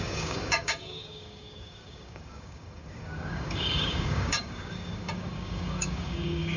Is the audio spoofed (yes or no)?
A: yes